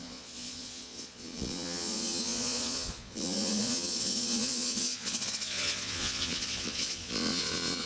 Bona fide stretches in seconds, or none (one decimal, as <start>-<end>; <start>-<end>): none